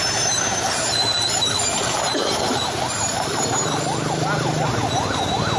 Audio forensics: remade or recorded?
recorded